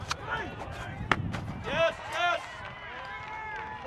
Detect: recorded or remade recorded